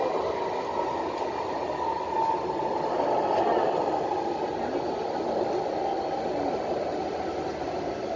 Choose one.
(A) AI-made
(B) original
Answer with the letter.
B